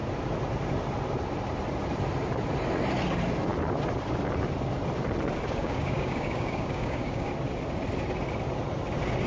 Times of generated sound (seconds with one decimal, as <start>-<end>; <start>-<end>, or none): 5.6-7.3